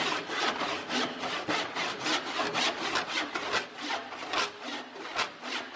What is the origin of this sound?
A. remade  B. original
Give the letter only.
B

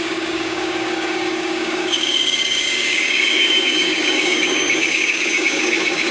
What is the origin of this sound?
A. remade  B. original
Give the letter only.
A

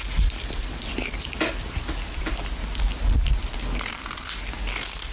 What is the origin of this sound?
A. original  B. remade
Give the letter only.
A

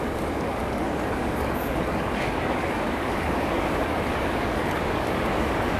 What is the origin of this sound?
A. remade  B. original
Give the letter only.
A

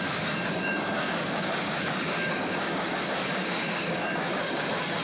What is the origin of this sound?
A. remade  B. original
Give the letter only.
A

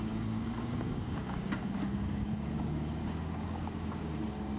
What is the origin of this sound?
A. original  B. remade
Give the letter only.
B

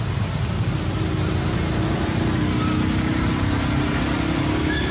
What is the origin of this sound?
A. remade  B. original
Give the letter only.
B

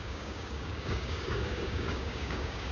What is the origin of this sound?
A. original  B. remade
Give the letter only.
B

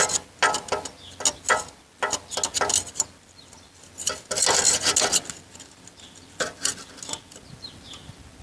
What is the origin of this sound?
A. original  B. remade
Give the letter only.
A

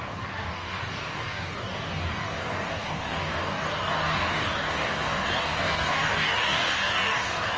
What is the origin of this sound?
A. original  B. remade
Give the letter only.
B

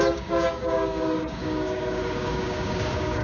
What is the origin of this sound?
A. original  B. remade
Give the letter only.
B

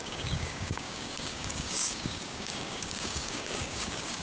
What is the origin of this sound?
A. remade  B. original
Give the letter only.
A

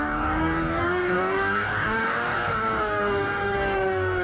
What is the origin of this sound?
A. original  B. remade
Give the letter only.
B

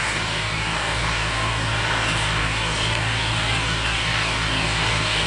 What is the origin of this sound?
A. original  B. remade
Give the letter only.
B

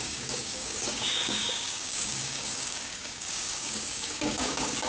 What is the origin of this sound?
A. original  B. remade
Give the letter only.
B